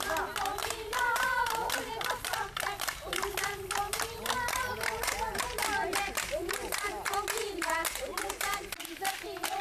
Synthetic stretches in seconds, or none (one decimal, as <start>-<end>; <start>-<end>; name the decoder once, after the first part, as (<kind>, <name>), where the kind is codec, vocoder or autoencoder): 0.6-1.4 (vocoder, BigVGAN v2)